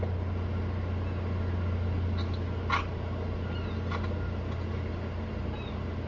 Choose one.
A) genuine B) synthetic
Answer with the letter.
A